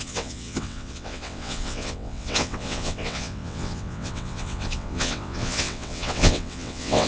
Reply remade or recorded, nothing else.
remade